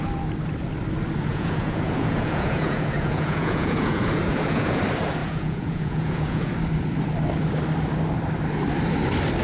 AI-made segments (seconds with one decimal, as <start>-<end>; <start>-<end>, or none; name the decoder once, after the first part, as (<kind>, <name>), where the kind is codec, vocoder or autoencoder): 1.3-4.8 (vocoder, Vocos); 5.2-6.5